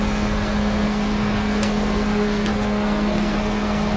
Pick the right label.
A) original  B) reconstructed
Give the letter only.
B